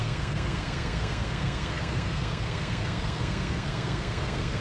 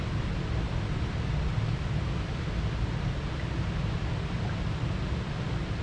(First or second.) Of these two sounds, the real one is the second